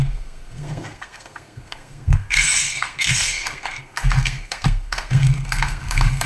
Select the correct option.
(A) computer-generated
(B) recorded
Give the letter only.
A